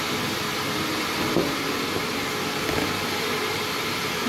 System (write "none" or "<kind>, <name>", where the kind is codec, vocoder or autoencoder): none